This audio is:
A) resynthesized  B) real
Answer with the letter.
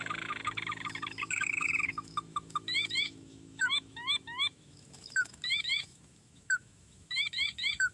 A